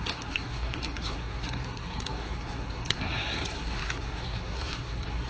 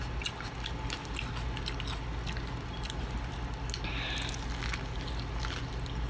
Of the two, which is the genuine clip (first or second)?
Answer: second